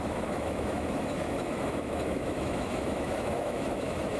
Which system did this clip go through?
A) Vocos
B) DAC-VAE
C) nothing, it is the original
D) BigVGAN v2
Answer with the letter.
B